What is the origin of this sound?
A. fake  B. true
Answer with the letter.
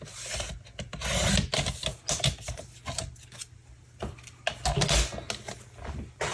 B